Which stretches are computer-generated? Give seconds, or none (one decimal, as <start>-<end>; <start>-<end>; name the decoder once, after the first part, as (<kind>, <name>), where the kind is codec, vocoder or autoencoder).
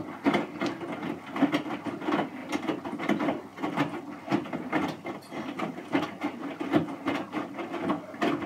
none